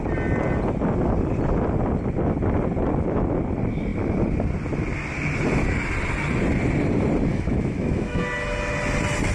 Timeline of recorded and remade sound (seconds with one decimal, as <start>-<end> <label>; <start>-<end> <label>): 0.0-7.3 recorded; 7.3-8.2 remade; 8.2-9.3 recorded